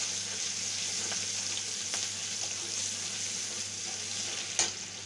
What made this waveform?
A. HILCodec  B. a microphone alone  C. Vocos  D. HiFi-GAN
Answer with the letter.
B